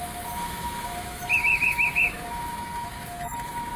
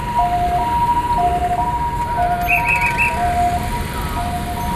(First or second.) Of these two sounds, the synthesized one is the first